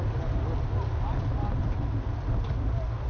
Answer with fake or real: real